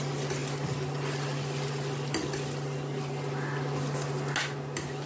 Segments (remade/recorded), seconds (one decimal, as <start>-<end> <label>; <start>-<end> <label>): 0.0-5.1 recorded